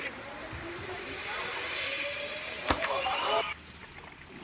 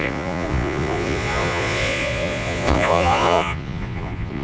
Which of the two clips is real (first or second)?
first